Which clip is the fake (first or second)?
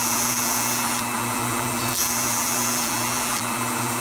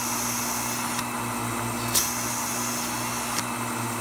first